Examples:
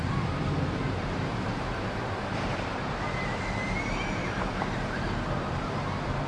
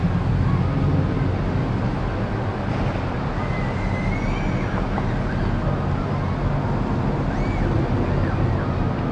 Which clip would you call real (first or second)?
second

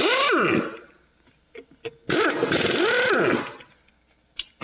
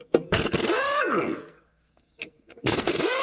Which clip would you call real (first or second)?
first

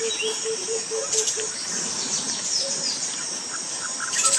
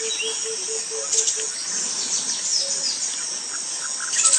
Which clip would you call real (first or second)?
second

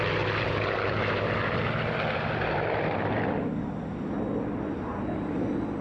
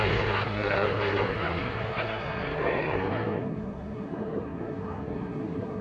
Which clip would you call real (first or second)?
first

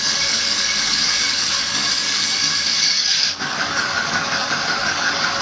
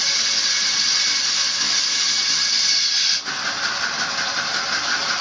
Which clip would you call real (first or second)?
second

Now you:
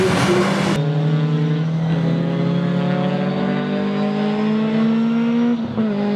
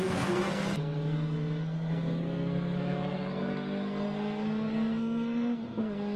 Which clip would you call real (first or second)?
first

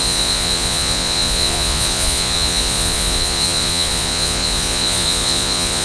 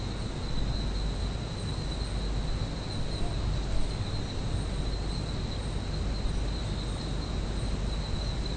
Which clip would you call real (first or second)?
second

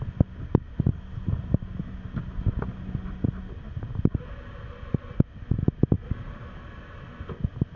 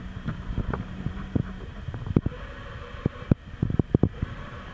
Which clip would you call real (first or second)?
first